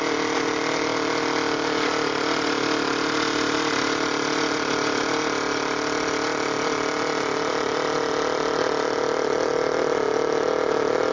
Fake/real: real